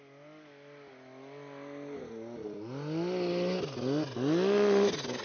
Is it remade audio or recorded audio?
recorded